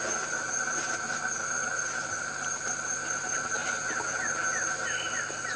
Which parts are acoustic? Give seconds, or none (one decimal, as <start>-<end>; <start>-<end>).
0.0-3.6; 5.1-5.6